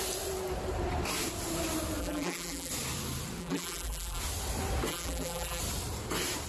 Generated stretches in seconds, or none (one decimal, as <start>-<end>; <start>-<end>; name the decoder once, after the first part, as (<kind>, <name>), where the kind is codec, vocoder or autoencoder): 2.0-2.7 (vocoder, BigVGAN v2); 3.4-4.2; 4.9-5.6